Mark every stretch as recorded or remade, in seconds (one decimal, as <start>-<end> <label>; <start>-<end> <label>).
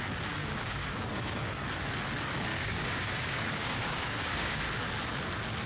0.0-0.4 recorded; 0.4-1.5 remade; 1.5-2.5 recorded; 2.5-4.6 remade; 4.6-5.7 recorded